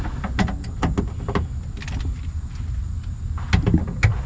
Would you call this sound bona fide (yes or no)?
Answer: yes